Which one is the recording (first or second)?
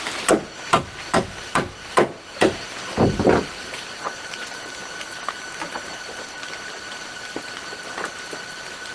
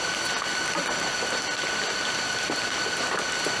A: second